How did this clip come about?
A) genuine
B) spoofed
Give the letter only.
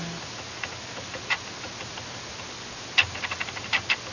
A